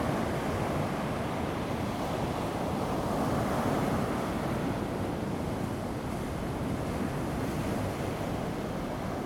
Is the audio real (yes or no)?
yes